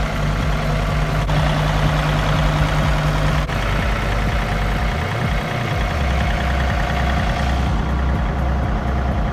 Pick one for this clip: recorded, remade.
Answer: recorded